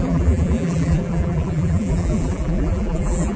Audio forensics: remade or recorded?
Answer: remade